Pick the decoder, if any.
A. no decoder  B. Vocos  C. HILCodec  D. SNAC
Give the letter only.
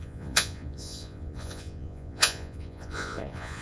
B